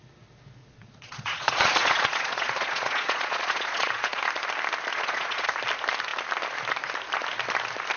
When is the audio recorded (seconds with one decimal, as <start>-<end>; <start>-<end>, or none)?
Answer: 0.0-0.6; 4.2-4.9; 5.5-8.0